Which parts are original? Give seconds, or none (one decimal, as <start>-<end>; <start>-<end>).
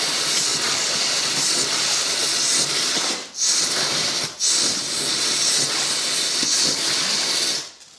0.0-8.0